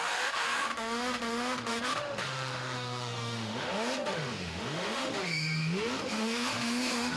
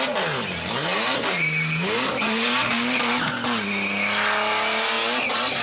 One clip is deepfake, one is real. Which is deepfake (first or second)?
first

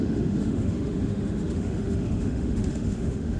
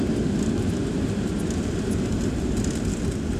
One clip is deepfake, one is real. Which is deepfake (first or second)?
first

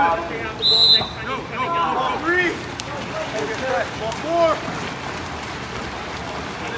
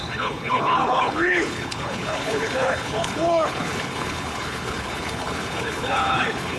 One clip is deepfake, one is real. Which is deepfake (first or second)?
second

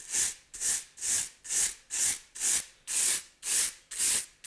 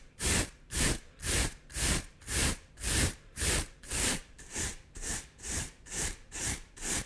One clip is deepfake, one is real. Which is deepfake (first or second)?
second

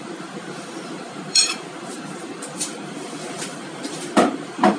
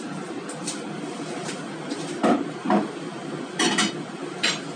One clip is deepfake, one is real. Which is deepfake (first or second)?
first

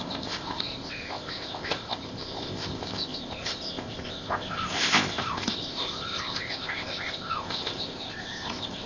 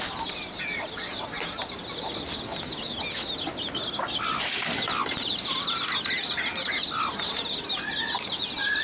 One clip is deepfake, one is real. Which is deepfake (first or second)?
first